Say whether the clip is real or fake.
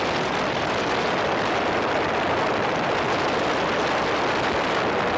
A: real